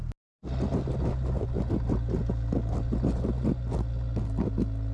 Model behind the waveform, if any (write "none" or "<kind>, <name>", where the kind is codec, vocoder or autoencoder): none